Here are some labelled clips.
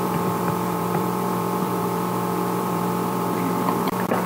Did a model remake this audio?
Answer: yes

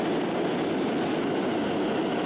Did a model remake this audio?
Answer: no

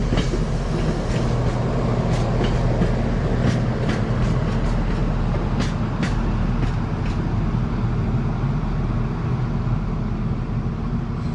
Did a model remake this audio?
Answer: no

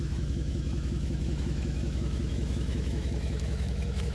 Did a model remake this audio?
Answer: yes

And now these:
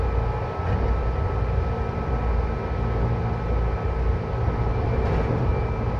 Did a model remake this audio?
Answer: no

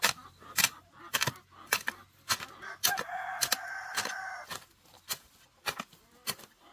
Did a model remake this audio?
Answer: no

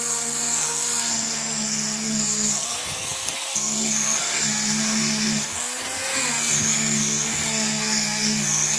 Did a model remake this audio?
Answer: yes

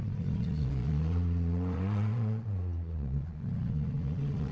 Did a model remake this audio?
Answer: yes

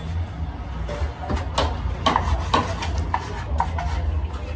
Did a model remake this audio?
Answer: no